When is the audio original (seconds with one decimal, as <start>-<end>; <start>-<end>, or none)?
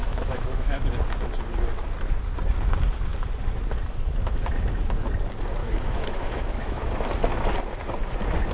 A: 0.8-5.6; 6.9-8.5